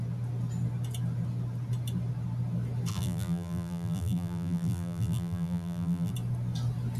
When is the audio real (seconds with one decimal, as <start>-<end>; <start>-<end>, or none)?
0.0-2.9; 6.1-7.0